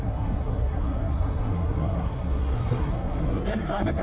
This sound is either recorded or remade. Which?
remade